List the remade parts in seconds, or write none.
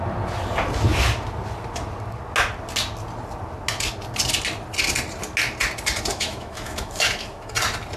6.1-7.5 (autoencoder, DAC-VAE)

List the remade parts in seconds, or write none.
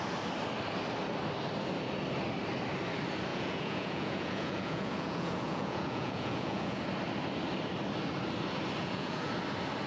3.3-6.8 (vocoder, Vocos); 8.8-9.3